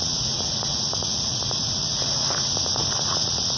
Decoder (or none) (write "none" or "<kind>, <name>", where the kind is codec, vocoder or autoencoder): vocoder, Vocos